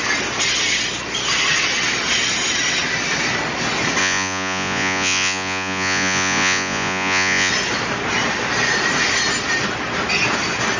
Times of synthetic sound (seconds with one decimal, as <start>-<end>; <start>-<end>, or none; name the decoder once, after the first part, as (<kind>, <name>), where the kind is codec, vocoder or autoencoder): 4.0-7.5 (vocoder, Vocos)